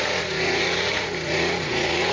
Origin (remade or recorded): remade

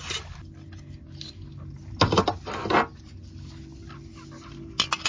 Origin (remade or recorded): recorded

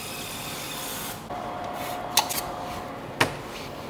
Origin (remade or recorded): recorded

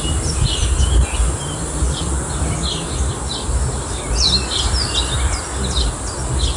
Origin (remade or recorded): recorded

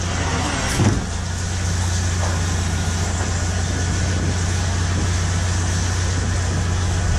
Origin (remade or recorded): recorded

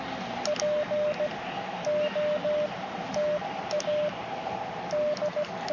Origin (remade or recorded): recorded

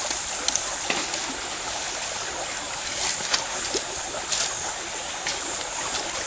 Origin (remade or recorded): recorded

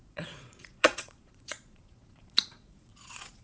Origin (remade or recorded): remade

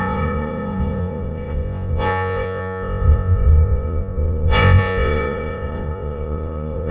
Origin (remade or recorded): remade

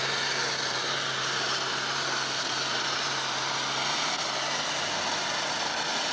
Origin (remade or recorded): recorded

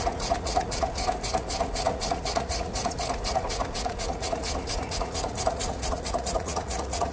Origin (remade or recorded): remade